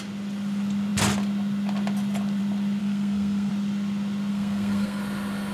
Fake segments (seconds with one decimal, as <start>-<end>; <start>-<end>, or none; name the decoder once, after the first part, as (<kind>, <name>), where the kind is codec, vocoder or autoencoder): 2.8-3.5 (codec, SNAC); 4.3-5.0